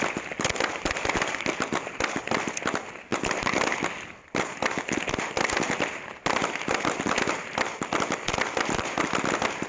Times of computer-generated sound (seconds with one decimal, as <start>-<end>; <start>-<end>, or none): none